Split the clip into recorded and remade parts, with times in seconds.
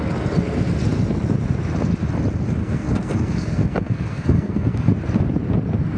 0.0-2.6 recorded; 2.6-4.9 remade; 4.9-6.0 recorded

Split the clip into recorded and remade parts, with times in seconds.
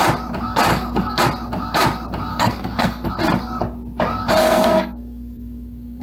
0.0-0.7 recorded; 0.7-1.2 remade; 1.2-2.3 recorded; 2.3-3.1 remade; 3.1-4.4 recorded; 4.4-6.0 remade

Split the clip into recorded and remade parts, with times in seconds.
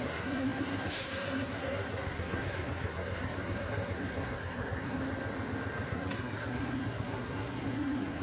0.0-5.0 remade; 5.0-5.9 recorded; 5.9-8.2 remade